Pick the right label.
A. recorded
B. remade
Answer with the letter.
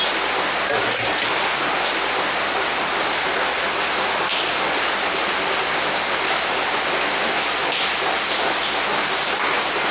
A